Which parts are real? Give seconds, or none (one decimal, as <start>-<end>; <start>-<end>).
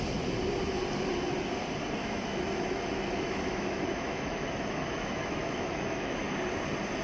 0.0-2.0; 6.2-7.0